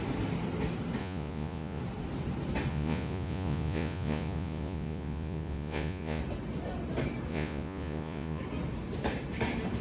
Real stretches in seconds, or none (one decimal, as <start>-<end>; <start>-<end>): 0.0-1.0; 1.8-2.7; 6.2-7.3; 8.4-9.8